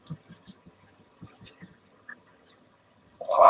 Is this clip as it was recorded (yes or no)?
no